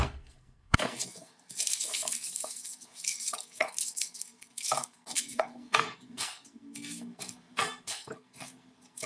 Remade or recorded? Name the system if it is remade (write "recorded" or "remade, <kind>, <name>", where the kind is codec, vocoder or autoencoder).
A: remade, codec, SNAC